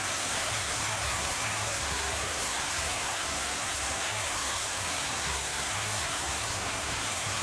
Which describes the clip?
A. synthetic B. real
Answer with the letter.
A